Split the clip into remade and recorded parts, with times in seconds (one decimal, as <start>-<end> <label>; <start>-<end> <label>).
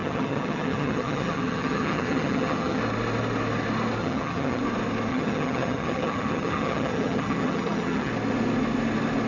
0.0-2.8 remade; 2.8-4.0 recorded; 4.0-4.6 remade; 4.6-5.1 recorded; 5.1-8.1 remade; 8.1-9.3 recorded